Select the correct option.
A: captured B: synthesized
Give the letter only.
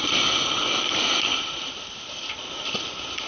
A